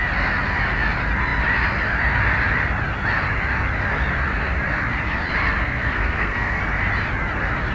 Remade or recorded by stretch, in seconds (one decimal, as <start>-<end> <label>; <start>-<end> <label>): 0.0-5.6 recorded; 5.6-6.6 remade; 6.6-7.7 recorded